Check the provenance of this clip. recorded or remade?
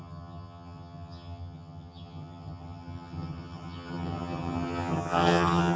remade